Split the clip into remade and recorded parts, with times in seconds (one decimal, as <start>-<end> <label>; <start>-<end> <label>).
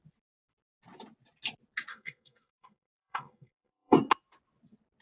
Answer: 0.0-1.9 recorded; 1.9-4.0 remade; 4.0-5.0 recorded